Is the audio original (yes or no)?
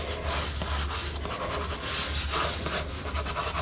yes